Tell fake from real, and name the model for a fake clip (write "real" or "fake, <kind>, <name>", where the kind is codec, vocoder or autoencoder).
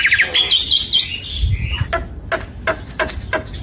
real